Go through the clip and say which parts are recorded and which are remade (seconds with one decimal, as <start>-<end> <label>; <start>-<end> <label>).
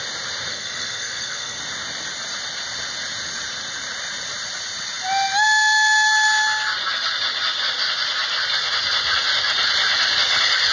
0.0-0.5 recorded; 0.5-1.6 remade; 1.6-10.7 recorded